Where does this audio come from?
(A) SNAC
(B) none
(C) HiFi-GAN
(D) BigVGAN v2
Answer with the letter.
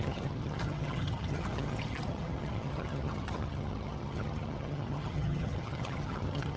C